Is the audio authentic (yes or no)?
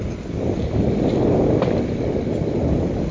yes